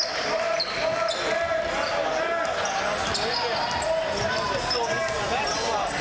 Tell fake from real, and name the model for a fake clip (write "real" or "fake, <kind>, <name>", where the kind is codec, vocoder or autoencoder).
real